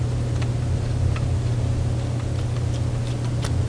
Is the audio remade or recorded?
recorded